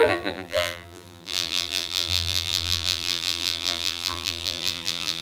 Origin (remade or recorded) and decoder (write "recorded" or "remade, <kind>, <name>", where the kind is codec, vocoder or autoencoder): remade, vocoder, BigVGAN v2